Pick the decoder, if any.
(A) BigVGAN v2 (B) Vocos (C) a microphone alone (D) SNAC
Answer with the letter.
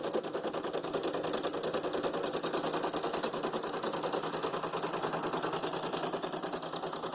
C